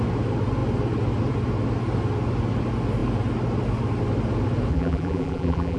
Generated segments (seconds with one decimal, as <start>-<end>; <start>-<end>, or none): 4.7-5.8